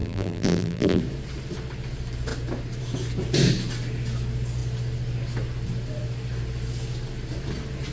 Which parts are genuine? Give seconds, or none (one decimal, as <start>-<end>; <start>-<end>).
1.0-7.9